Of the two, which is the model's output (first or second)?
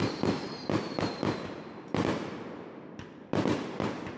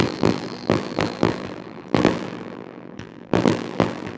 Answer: second